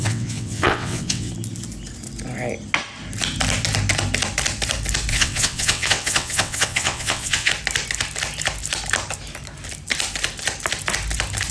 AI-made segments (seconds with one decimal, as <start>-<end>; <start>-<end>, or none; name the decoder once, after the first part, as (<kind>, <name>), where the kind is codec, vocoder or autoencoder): 0.0-1.3 (vocoder, WaveNeXt); 5.1-7.5